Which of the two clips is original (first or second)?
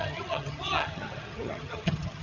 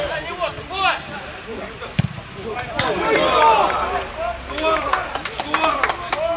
second